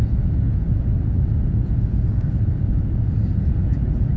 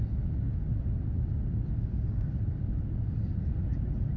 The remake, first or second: first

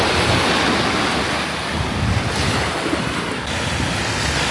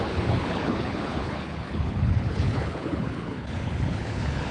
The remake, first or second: second